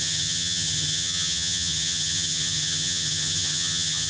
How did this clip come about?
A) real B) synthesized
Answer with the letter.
B